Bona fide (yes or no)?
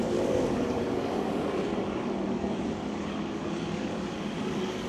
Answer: no